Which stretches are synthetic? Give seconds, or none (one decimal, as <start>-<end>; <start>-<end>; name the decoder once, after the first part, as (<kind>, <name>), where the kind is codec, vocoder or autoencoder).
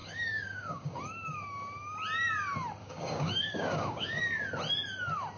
0.0-1.0 (codec, DAC); 2.8-4.2